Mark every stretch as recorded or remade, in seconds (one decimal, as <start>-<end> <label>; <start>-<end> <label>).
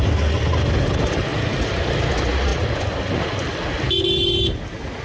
0.0-1.3 recorded; 1.3-2.0 remade; 2.0-5.0 recorded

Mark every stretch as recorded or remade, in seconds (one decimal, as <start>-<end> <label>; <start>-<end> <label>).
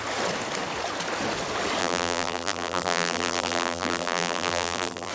0.0-1.8 recorded; 1.8-5.1 remade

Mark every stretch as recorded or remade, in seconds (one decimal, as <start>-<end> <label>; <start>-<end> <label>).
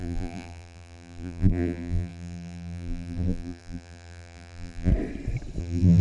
0.0-4.9 remade; 4.9-5.6 recorded; 5.6-6.0 remade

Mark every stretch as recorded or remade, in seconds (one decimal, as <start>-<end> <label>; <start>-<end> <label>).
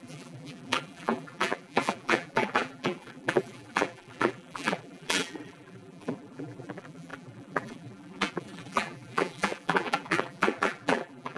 0.0-11.4 remade